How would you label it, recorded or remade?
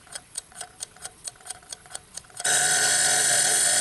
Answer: remade